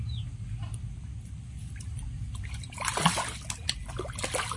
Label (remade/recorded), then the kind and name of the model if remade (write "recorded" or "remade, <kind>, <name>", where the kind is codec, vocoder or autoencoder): recorded